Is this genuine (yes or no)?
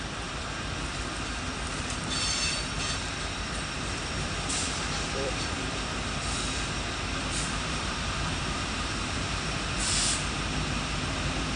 no